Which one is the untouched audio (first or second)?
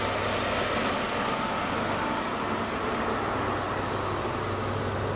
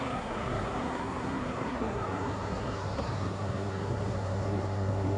first